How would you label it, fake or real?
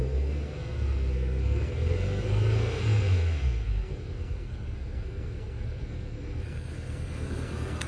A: fake